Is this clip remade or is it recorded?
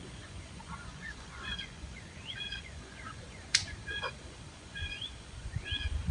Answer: remade